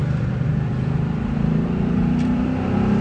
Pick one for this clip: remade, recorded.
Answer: remade